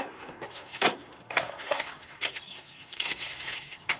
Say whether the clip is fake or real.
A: fake